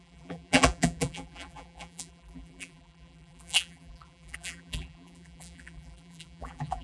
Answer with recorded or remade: remade